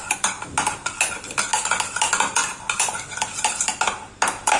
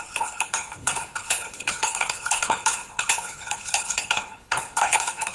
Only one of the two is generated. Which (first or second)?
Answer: second